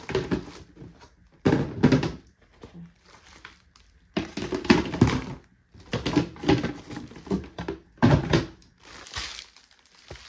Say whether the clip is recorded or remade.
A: recorded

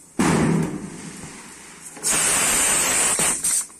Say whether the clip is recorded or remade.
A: recorded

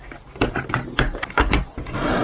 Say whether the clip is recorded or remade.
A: recorded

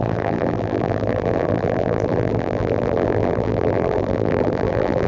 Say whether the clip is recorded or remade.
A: remade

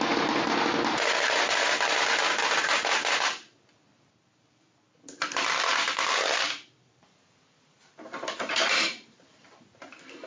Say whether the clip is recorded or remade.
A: remade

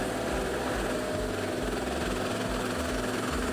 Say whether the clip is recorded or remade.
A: recorded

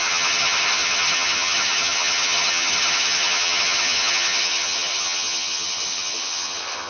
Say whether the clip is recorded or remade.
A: remade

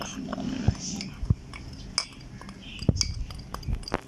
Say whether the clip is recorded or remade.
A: recorded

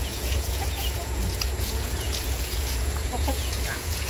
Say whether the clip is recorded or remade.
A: remade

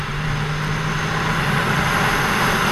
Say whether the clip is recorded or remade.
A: recorded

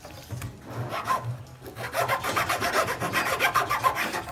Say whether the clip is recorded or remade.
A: recorded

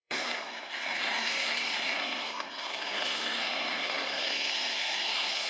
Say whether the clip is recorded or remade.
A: remade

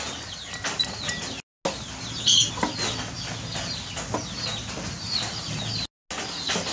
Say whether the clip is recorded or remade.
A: recorded